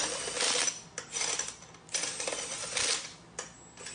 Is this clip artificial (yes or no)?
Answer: no